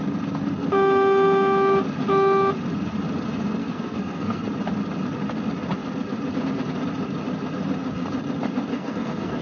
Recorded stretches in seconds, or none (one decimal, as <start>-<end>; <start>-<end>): 0.0-3.6; 4.5-8.7